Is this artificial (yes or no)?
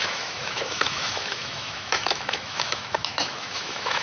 yes